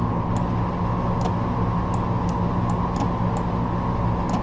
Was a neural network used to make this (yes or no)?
no